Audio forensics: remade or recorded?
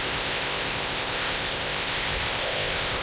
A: remade